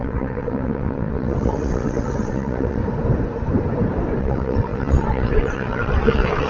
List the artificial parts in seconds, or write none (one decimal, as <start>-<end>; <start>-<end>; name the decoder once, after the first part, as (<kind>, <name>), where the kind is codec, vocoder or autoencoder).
0.0-2.8 (vocoder, WaveNeXt); 4.2-6.5